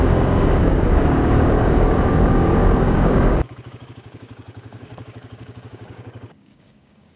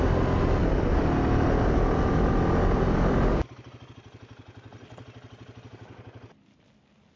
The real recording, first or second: second